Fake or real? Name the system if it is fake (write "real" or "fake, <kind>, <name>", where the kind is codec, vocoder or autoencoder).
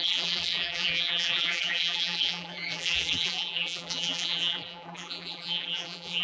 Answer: fake, vocoder, BigVGAN v2